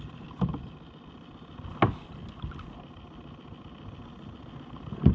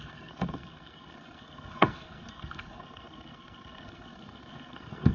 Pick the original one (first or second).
first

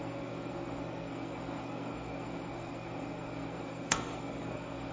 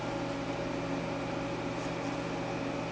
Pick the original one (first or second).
second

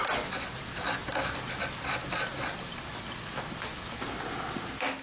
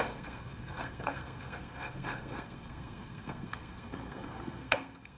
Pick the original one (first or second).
first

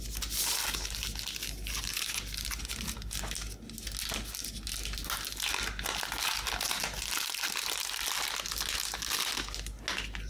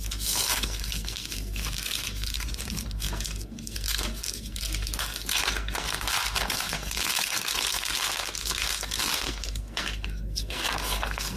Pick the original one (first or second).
first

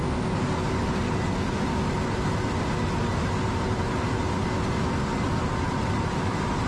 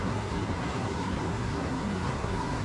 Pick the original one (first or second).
first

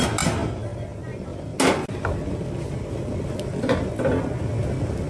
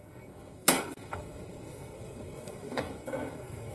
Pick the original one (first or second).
first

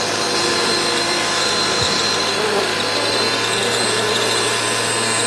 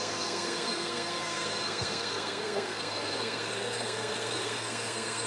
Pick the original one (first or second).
first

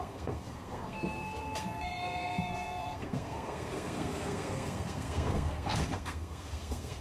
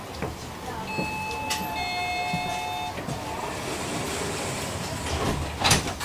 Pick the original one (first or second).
second